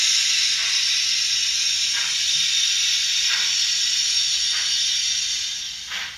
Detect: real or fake real